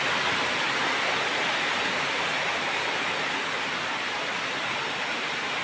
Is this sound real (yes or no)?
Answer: yes